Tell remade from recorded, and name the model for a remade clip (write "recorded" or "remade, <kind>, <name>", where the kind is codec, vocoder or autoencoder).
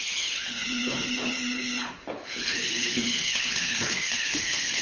remade, codec, HILCodec